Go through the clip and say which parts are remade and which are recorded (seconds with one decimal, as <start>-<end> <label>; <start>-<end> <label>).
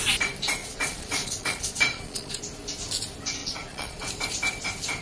0.0-0.6 recorded; 0.6-2.4 remade; 2.4-3.4 recorded; 3.4-4.1 remade; 4.1-5.0 recorded